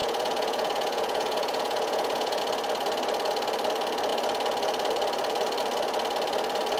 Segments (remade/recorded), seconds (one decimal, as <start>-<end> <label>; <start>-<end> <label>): 0.0-2.4 remade; 2.4-6.8 recorded